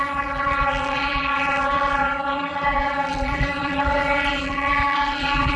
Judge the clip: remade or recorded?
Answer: remade